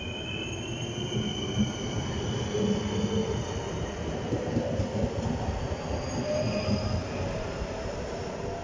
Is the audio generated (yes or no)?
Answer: no